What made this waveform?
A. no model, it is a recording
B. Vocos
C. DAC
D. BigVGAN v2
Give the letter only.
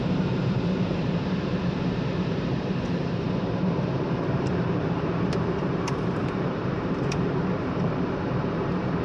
D